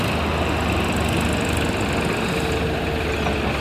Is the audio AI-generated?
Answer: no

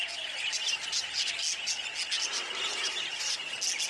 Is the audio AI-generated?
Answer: no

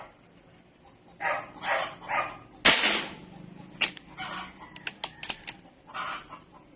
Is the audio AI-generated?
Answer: no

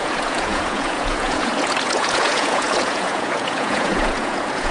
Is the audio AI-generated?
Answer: yes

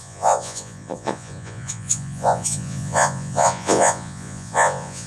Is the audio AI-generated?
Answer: yes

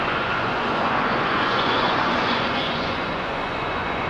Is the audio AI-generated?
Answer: yes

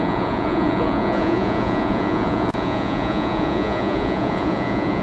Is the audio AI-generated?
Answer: yes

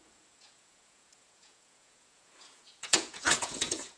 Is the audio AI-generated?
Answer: yes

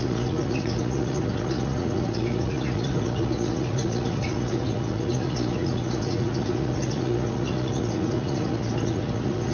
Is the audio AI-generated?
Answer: yes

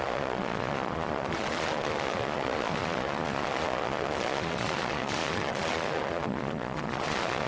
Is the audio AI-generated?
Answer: yes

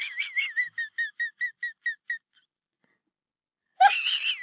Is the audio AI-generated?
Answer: no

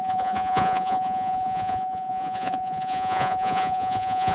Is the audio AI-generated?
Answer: yes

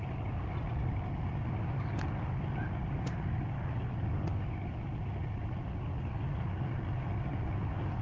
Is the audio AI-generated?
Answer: no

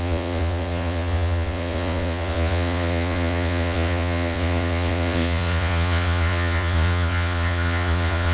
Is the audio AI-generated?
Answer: yes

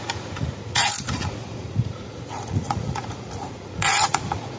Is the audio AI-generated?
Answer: yes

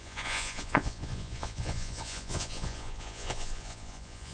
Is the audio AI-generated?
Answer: yes